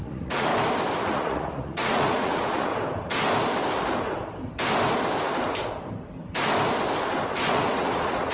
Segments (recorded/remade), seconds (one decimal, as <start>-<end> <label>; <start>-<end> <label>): 0.0-0.5 remade; 0.5-1.0 recorded; 1.0-2.7 remade; 2.7-7.5 recorded; 7.5-8.3 remade